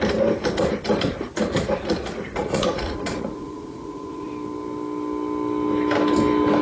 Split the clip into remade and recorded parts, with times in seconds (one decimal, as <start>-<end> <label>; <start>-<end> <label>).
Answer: 0.0-2.4 recorded; 2.4-4.3 remade; 4.3-6.6 recorded